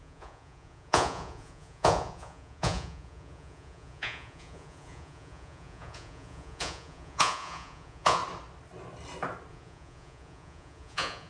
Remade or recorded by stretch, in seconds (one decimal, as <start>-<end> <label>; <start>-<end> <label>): 0.0-8.2 remade; 8.2-9.5 recorded; 9.5-11.3 remade